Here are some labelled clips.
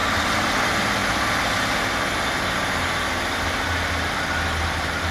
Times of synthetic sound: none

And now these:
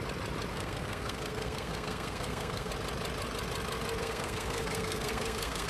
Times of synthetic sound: 0.5-2.7 (codec, SNAC); 4.0-5.7

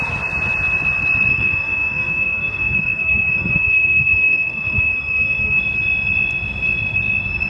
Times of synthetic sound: 1.3-5.6 (codec, SNAC)

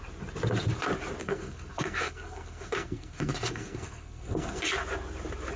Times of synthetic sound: 1.2-4.6 (codec, SNAC)

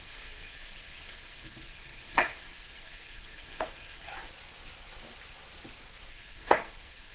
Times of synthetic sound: 0.0-4.1 (codec, SNAC); 6.1-7.1

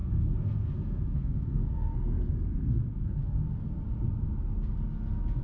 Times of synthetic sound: 0.0-3.2 (codec, SNAC)

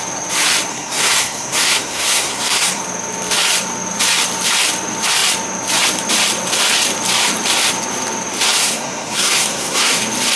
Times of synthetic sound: 0.7-2.8 (codec, SNAC); 8.6-10.0

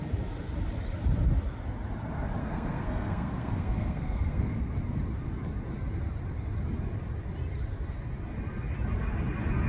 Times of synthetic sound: 2.4-4.6 (codec, SNAC)